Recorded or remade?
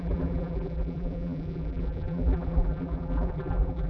remade